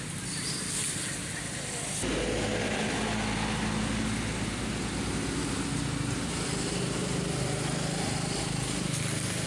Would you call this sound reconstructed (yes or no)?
no